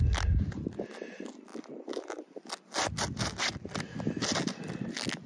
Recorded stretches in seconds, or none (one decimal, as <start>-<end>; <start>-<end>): 0.0-1.5; 4.7-5.3